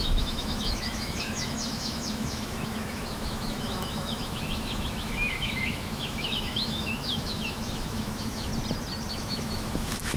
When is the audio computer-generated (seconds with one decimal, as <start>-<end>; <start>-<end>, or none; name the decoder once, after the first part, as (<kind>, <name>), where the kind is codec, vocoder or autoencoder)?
0.0-8.5 (autoencoder, DAC-VAE); 9.1-10.2